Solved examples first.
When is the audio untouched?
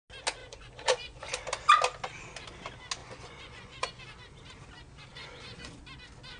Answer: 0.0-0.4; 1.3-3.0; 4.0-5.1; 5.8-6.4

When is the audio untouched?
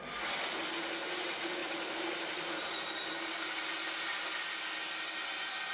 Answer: 0.0-5.7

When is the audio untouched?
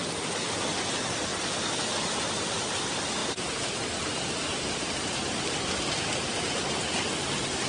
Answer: 0.0-7.7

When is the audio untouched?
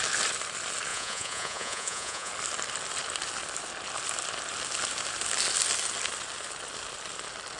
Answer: 0.0-0.9; 2.3-7.6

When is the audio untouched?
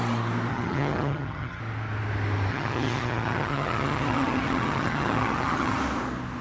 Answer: 0.0-0.5; 1.6-2.5; 5.8-6.4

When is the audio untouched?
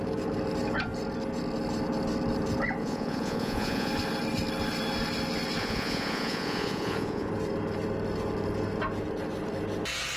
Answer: 0.0-2.8; 3.9-5.6; 7.3-10.2